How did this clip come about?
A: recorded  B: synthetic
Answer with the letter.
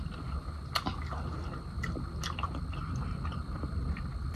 A